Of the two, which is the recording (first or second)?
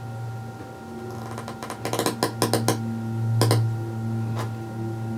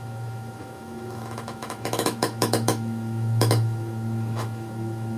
first